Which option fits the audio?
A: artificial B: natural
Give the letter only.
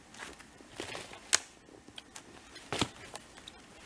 B